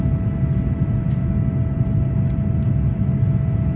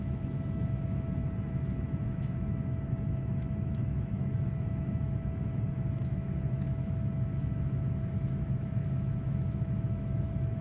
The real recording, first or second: first